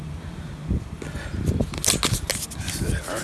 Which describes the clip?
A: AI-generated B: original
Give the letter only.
B